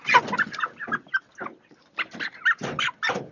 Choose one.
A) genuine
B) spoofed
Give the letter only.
A